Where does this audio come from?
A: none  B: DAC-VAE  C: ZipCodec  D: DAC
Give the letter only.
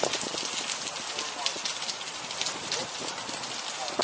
A